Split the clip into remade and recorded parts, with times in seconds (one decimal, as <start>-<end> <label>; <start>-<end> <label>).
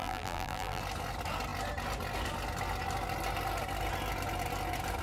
0.0-0.8 remade; 0.8-5.0 recorded